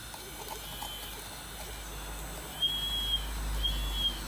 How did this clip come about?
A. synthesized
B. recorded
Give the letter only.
B